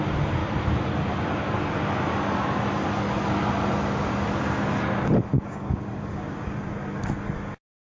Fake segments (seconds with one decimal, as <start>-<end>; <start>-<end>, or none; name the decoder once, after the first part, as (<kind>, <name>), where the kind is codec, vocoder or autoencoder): 5.3-6.5 (codec, DAC)